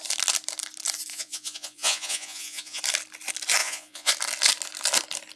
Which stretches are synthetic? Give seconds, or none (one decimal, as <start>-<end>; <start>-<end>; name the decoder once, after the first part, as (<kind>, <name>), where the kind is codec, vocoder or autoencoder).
1.1-2.8 (vocoder, Vocos); 3.6-4.1